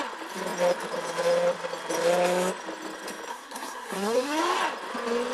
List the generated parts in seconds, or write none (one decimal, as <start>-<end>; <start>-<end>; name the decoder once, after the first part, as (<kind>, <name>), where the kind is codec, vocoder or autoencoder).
3.3-4.4 (codec, SNAC)